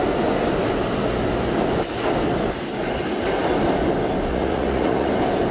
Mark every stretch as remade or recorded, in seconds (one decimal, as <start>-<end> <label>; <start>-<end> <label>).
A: 0.0-4.3 recorded; 4.3-5.1 remade; 5.1-5.5 recorded

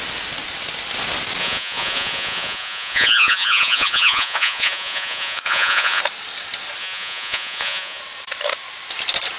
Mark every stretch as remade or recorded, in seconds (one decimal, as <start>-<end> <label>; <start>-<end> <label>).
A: 0.0-1.4 recorded; 1.4-6.0 remade; 6.0-6.8 recorded; 6.8-8.0 remade; 8.0-9.4 recorded

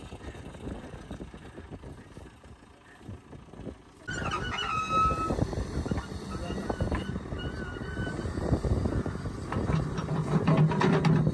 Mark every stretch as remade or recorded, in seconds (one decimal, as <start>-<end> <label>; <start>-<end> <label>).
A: 0.0-11.3 recorded

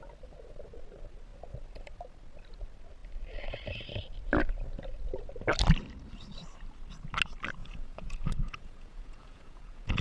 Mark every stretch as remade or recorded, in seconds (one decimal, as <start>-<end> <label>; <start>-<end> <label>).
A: 0.0-7.6 recorded; 7.6-10.0 remade

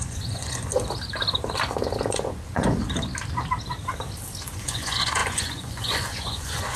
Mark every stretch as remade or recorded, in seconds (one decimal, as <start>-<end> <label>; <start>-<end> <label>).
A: 0.0-0.7 remade; 0.7-2.1 recorded; 2.1-2.8 remade; 2.8-4.4 recorded; 4.4-6.8 remade